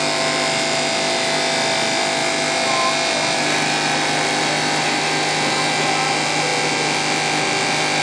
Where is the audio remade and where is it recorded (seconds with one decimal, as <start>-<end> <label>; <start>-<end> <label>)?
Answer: 0.0-8.0 recorded